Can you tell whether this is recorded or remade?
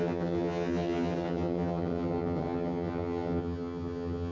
remade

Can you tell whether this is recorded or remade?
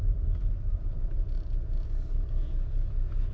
recorded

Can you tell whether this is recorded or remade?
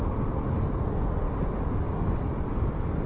recorded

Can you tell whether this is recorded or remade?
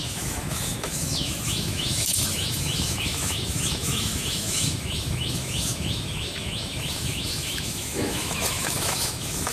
remade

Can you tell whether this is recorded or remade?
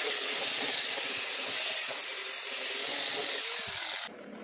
recorded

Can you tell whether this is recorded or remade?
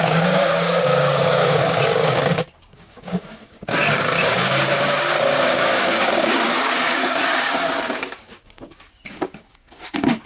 remade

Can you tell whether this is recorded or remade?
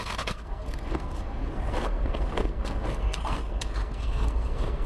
remade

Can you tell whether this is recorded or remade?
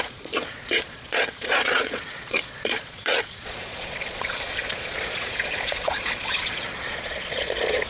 remade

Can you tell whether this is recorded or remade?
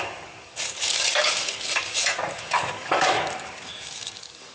remade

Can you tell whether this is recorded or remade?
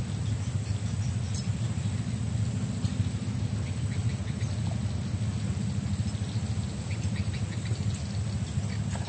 recorded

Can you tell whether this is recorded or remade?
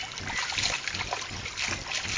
recorded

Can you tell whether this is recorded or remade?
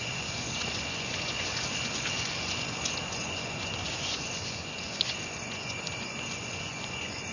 remade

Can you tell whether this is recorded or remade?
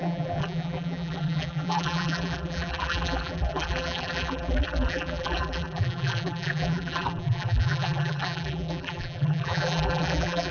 remade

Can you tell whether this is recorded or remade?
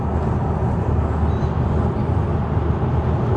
recorded